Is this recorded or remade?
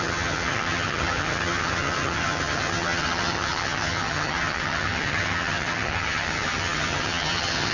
remade